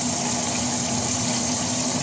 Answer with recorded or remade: recorded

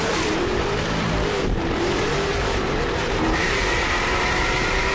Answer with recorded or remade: remade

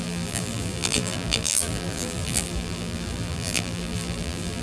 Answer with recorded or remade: remade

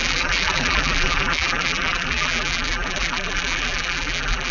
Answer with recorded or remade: remade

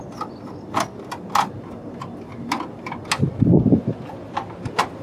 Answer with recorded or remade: recorded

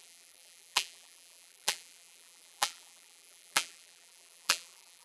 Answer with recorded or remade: remade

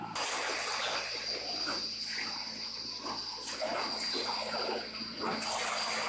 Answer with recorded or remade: recorded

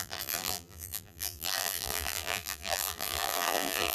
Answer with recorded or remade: remade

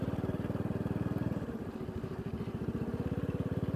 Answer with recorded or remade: recorded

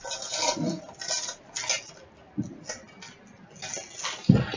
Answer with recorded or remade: recorded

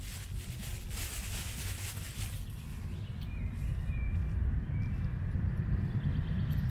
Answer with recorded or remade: recorded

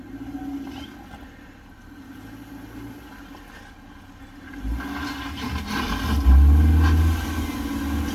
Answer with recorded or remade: recorded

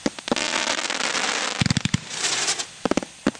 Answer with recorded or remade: remade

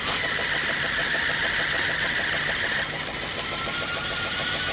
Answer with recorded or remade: recorded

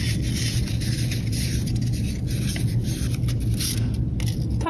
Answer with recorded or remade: recorded